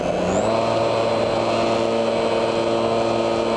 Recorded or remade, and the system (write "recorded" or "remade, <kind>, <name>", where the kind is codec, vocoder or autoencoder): recorded